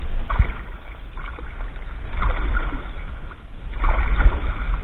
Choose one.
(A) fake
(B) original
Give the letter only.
B